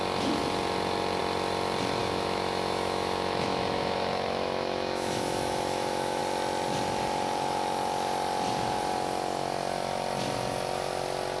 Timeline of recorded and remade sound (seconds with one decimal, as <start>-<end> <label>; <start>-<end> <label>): 0.0-2.0 recorded; 2.0-6.2 remade; 6.2-11.4 recorded